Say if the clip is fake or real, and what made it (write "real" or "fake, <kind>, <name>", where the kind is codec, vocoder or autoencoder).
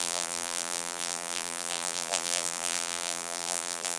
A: fake, vocoder, BigVGAN v2